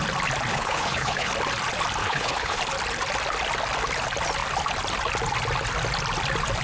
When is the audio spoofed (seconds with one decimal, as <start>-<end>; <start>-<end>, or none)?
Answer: 0.5-1.3; 2.0-2.6